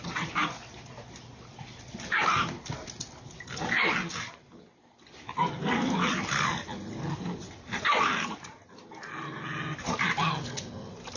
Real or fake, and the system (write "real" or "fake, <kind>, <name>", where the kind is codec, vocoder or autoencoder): real